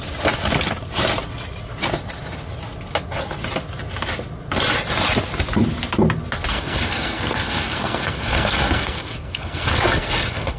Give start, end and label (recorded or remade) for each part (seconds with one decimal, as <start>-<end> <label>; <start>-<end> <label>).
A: 0.0-6.5 recorded; 6.5-10.6 remade